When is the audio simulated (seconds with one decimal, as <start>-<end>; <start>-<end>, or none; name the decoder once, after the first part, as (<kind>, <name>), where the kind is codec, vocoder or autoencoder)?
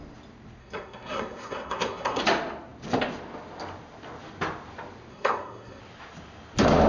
0.6-2.2 (codec, SNAC); 5.1-5.8